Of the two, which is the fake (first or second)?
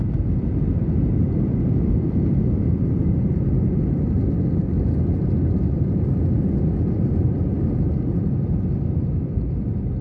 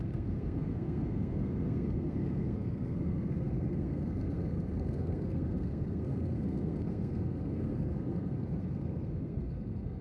second